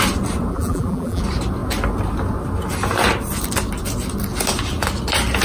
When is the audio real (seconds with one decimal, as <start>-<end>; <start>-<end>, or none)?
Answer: 0.0-0.5; 1.2-5.4